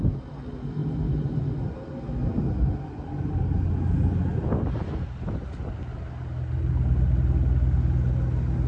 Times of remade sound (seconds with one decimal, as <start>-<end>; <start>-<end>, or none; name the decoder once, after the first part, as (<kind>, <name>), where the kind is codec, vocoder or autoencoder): none